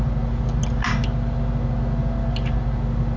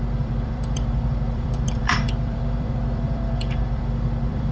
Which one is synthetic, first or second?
second